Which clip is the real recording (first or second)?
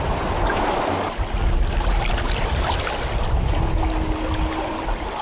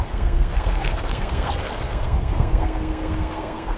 first